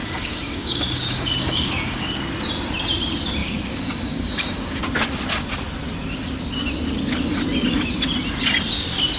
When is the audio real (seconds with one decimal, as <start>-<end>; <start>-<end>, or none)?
2.2-3.4; 4.8-9.2